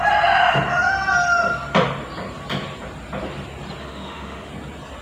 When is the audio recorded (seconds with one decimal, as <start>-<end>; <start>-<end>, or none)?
0.0-3.8; 4.5-5.0